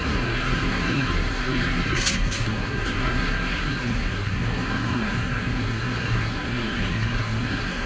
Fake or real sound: fake